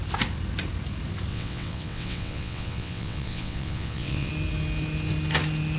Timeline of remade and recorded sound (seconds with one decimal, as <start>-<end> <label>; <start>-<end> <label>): 0.0-1.3 recorded; 1.3-4.3 remade; 4.3-5.8 recorded